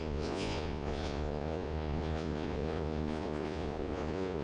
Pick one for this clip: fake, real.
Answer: fake